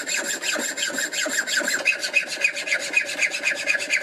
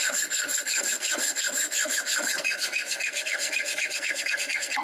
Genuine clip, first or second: first